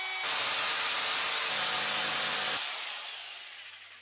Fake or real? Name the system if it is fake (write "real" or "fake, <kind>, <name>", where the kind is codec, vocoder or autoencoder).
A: real